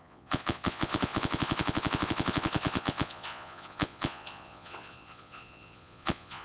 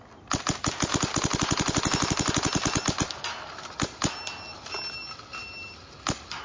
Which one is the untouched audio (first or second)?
second